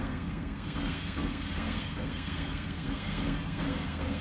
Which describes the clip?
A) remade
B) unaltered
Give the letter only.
A